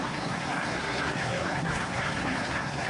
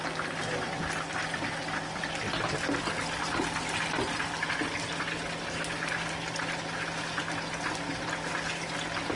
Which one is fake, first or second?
first